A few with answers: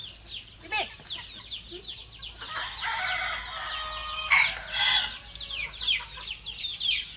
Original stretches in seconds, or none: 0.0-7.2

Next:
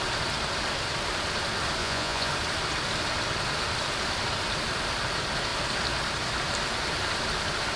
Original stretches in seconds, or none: 0.0-1.8; 2.3-7.8